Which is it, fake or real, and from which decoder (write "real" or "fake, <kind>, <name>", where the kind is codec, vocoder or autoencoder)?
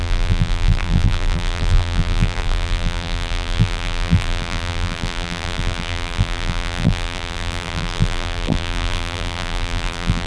fake, vocoder, BigVGAN v2